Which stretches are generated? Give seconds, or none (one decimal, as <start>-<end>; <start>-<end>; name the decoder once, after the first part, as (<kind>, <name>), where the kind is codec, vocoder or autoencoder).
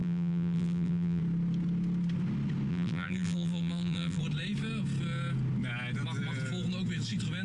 0.0-1.2 (vocoder, BigVGAN v2); 2.7-4.2